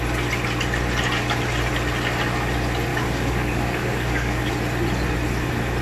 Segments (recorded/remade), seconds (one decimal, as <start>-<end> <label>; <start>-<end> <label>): 0.0-2.9 recorded; 2.9-4.5 remade; 4.5-5.8 recorded

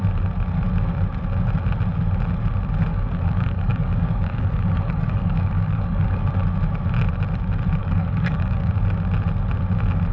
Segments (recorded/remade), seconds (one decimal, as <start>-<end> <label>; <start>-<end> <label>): 0.0-2.9 recorded; 2.9-6.2 remade; 6.2-7.8 recorded; 7.8-8.7 remade; 8.7-10.1 recorded

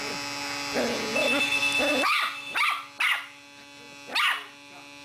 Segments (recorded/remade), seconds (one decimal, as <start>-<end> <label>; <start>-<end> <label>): 0.0-5.0 recorded

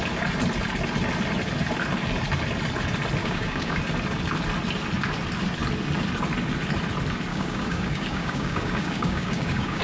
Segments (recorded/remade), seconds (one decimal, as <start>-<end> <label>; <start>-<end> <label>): 0.0-3.2 recorded; 3.2-3.8 remade; 3.8-7.3 recorded; 7.3-9.8 remade